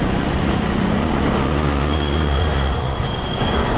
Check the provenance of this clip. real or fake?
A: fake